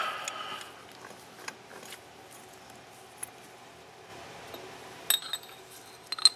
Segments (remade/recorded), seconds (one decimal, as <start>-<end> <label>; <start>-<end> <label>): 0.0-6.4 recorded